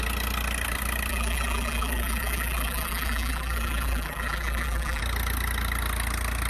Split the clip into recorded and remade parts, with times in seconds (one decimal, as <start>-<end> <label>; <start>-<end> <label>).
0.0-1.1 recorded; 1.1-5.0 remade; 5.0-6.5 recorded

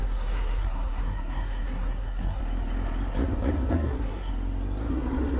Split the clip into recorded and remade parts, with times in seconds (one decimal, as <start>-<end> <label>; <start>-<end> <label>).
0.0-2.4 remade; 2.4-3.7 recorded; 3.7-4.3 remade; 4.3-4.9 recorded; 4.9-5.4 remade

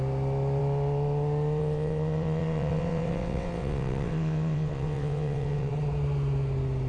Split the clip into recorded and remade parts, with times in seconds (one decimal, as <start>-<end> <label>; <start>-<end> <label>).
0.0-1.6 recorded; 1.6-5.7 remade; 5.7-6.9 recorded